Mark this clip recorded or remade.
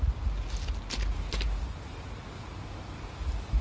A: recorded